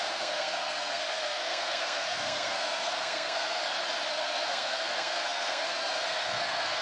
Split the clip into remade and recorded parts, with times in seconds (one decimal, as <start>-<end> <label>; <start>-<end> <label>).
0.0-3.6 remade; 3.6-4.1 recorded; 4.1-6.8 remade